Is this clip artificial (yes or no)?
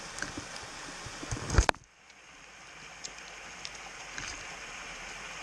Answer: no